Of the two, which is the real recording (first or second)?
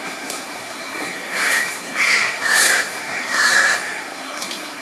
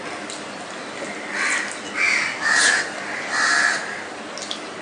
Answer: second